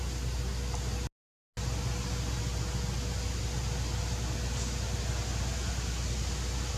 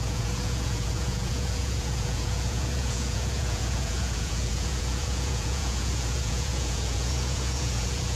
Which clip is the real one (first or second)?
first